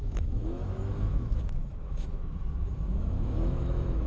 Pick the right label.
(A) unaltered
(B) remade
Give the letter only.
B